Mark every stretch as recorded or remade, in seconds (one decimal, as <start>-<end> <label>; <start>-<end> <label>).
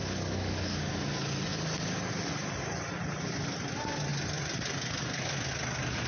0.0-0.9 remade; 0.9-6.1 recorded